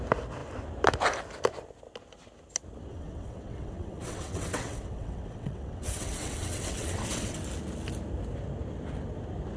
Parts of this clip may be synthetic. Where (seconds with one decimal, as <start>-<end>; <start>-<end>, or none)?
2.9-7.4